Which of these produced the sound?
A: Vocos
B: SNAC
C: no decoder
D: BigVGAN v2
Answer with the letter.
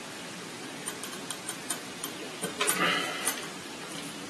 D